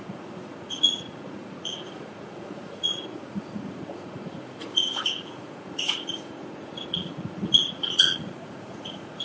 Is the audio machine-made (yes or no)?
yes